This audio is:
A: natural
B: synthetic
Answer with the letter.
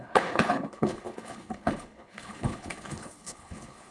B